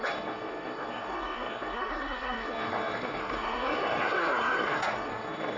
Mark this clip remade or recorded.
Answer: remade